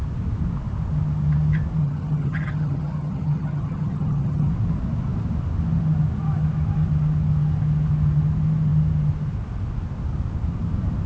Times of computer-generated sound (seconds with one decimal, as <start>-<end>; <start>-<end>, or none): 1.8-4.5